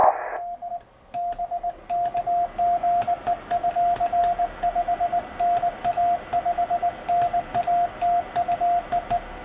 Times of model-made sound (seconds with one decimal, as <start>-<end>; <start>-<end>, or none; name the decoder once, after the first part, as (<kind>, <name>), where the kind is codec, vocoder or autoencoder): none